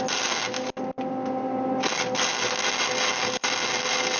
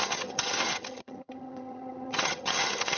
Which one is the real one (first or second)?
first